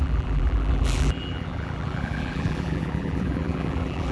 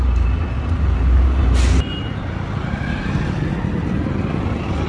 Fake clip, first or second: first